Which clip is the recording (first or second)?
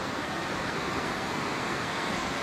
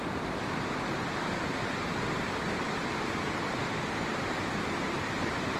second